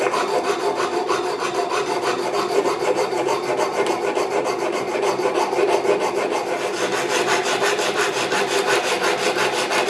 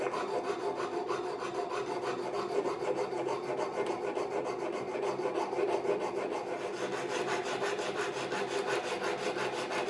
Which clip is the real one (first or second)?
second